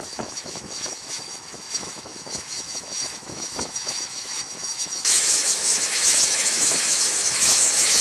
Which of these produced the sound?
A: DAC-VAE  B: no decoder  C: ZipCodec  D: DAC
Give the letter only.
A